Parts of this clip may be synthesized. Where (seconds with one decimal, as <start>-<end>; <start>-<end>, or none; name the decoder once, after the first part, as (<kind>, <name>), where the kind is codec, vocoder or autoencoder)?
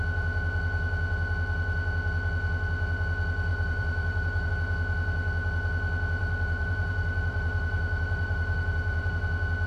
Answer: 3.5-4.5 (vocoder, BigVGAN v2); 6.2-9.2